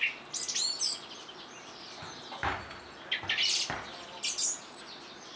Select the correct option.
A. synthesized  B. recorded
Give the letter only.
B